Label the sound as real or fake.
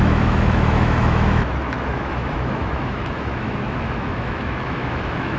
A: fake